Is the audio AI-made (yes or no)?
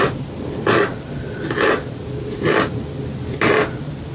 yes